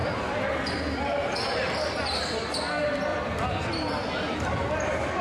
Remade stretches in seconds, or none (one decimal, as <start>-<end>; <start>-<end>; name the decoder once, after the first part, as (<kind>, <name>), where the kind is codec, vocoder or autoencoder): 0.0-2.6 (vocoder, BigVGAN v2); 3.1-3.7